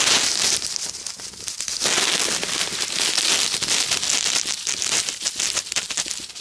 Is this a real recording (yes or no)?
yes